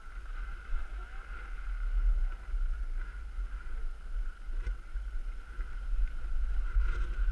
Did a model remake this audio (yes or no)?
no